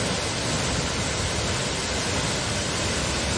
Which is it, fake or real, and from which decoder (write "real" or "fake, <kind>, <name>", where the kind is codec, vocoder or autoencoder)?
real